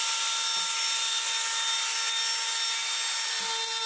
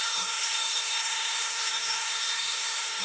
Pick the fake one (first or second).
second